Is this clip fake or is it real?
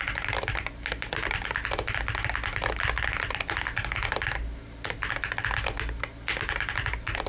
real